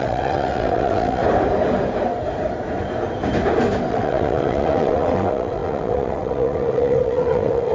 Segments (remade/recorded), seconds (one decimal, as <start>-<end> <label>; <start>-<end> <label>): 0.0-1.2 remade; 1.2-3.9 recorded; 3.9-7.7 remade